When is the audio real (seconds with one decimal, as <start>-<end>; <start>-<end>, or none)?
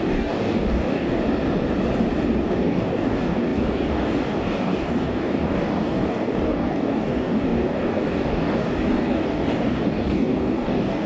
1.2-2.4